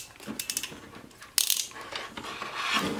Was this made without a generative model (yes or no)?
yes